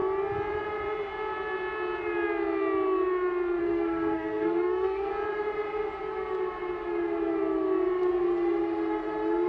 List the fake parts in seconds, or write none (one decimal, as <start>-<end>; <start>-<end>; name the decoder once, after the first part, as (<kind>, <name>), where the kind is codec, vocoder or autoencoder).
3.6-5.1 (codec, SNAC)

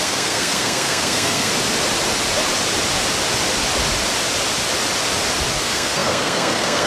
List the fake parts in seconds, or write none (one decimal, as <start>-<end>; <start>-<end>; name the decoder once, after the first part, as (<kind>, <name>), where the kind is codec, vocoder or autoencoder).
0.0-1.5 (codec, SNAC); 5.6-6.9

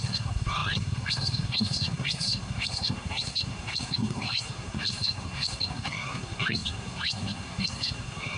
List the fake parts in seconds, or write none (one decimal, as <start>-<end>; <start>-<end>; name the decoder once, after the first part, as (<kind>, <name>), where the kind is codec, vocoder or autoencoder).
0.0-8.4 (codec, SNAC)

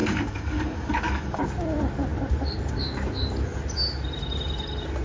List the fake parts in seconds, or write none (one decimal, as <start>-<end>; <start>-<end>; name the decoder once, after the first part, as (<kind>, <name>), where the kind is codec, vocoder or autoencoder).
0.0-1.4 (codec, DAC)

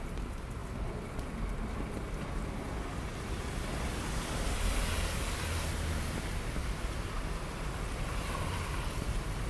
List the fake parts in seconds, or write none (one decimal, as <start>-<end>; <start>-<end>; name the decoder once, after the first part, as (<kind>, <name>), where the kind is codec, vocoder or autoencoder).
none